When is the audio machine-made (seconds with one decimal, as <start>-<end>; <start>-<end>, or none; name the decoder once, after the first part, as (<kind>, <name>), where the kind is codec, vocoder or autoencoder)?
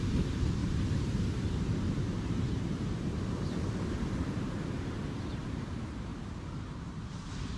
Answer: 0.0-7.6 (vocoder, BigVGAN v2)